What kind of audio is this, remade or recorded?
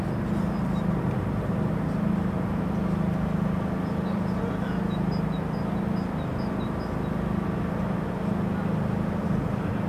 recorded